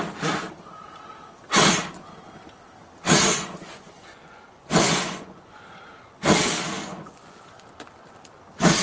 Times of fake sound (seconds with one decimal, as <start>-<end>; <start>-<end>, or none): 3.3-5.6; 6.8-7.5